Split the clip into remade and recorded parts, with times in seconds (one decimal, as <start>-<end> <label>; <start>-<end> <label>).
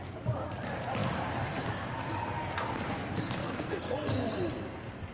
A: 0.0-3.4 recorded; 3.4-4.4 remade; 4.4-5.1 recorded